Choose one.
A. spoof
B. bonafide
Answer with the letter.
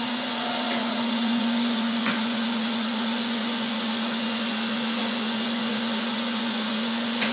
A